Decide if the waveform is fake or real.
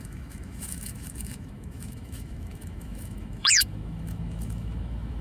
fake